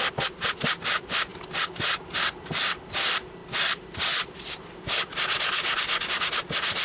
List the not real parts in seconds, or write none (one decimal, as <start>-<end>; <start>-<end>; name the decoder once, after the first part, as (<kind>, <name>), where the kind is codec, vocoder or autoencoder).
none